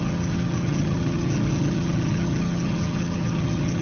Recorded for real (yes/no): no